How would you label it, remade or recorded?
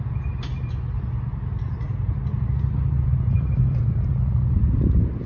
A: recorded